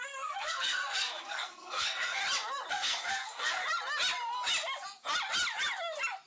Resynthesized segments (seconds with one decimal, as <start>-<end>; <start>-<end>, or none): 0.0-2.2; 2.7-3.6